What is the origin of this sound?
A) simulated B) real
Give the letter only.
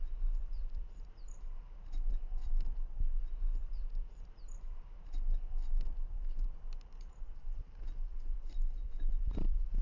A